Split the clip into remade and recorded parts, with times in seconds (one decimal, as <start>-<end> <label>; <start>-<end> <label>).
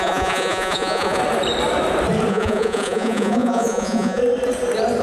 0.0-1.2 remade; 1.2-2.3 recorded; 2.3-4.2 remade; 4.2-5.0 recorded